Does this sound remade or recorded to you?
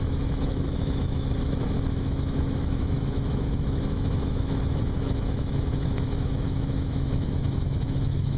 remade